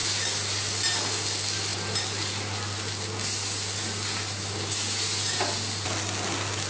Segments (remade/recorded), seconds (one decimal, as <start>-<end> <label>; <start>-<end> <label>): 0.0-6.7 recorded

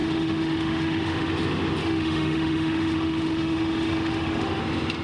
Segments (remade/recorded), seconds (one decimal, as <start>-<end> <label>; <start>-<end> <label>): 0.0-1.3 remade; 1.3-1.8 recorded; 1.8-4.6 remade; 4.6-5.0 recorded

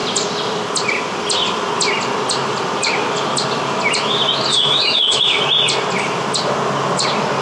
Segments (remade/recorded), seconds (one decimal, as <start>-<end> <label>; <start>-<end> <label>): 0.0-4.5 recorded; 4.5-5.4 remade; 5.4-7.4 recorded

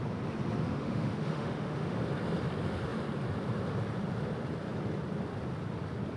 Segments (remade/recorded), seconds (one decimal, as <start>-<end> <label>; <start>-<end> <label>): 0.0-0.6 recorded; 0.6-2.0 remade; 2.0-6.2 recorded

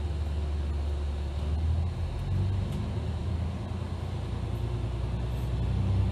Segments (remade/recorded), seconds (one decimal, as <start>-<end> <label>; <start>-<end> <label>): 0.0-6.1 recorded

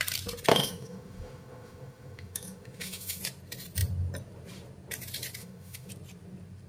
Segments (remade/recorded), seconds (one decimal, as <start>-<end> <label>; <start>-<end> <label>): 0.0-0.5 recorded; 0.5-3.2 remade; 3.2-5.4 recorded; 5.4-5.9 remade; 5.9-6.7 recorded